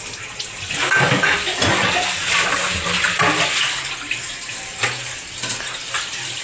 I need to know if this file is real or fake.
real